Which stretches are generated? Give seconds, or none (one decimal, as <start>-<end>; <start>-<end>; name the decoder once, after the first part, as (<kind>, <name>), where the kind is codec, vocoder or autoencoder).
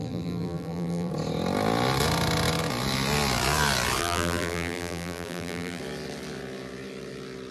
0.0-1.1 (vocoder, BigVGAN v2); 4.0-5.8